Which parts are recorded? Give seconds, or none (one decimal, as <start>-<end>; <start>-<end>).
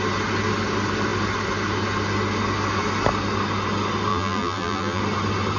0.0-4.1; 5.0-5.6